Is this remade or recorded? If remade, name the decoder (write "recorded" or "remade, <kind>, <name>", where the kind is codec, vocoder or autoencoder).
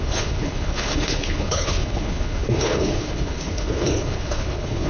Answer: remade, codec, HILCodec